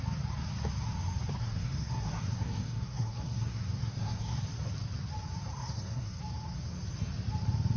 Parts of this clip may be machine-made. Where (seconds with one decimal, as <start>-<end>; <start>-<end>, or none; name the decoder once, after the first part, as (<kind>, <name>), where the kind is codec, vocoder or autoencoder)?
1.4-4.4 (codec, SNAC); 5.6-6.2